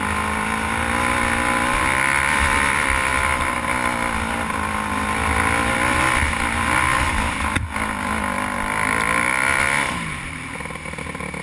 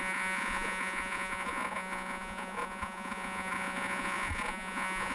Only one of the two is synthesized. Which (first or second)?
second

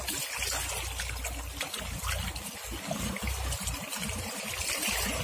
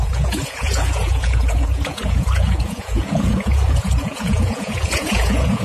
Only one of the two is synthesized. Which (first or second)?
second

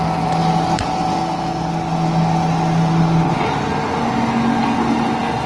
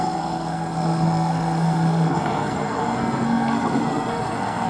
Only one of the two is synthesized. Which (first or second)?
second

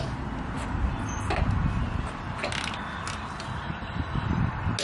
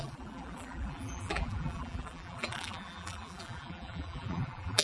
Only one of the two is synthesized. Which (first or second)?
second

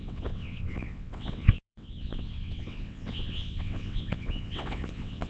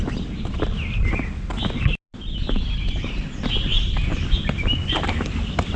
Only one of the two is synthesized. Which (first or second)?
first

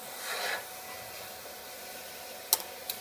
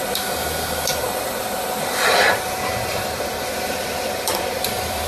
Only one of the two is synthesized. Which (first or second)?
second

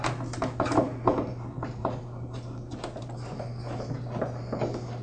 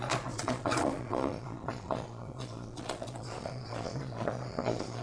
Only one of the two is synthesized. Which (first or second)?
second